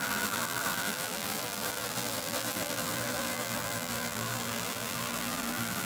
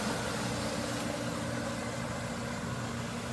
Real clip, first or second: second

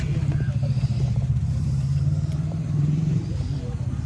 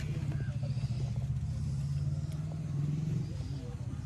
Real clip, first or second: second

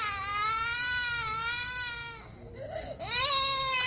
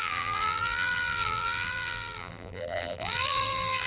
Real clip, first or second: first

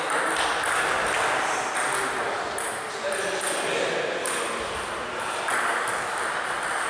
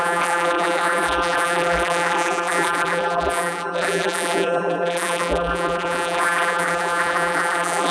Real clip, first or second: first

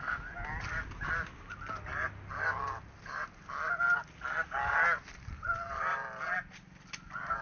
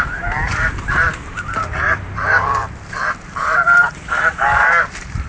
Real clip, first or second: first